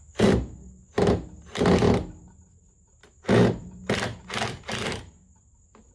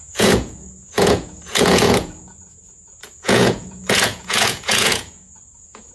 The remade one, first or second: second